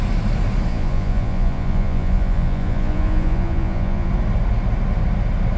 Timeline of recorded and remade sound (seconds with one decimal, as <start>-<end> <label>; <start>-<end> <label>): 0.0-0.7 recorded; 0.7-4.1 remade; 4.1-5.6 recorded